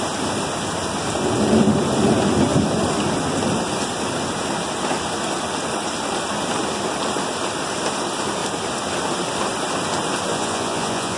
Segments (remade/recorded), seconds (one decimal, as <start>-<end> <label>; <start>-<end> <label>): 0.0-10.3 recorded; 10.3-11.2 remade